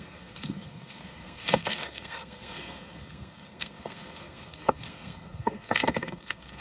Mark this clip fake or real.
fake